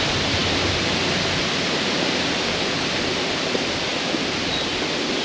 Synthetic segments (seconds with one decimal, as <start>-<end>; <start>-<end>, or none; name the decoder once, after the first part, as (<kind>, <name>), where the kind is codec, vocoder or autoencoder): none